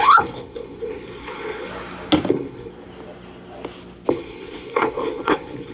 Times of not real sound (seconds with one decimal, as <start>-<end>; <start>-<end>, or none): 0.0-1.7; 2.3-2.7; 4.1-5.7